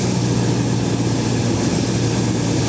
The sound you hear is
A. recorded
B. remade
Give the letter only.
A